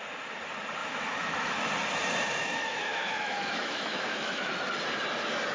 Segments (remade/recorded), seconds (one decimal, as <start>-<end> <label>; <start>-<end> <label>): 0.0-0.8 recorded; 0.8-1.7 remade; 1.7-2.4 recorded; 2.4-4.5 remade; 4.5-5.5 recorded

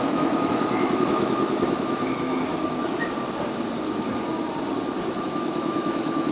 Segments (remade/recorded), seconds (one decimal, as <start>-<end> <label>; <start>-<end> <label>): 0.0-2.5 remade; 2.5-5.2 recorded; 5.2-6.3 remade

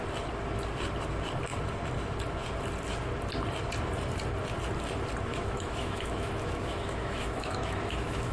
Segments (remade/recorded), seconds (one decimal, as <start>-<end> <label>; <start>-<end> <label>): 0.0-5.3 recorded; 5.3-8.3 remade

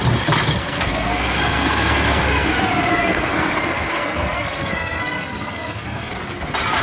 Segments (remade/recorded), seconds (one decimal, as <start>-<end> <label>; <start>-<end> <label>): 0.0-0.6 recorded; 0.6-2.5 remade; 2.5-2.9 recorded; 2.9-6.1 remade; 6.1-6.8 recorded

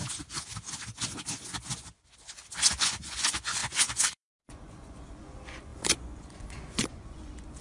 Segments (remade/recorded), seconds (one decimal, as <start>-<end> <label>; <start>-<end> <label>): 0.0-2.7 recorded; 2.7-7.6 remade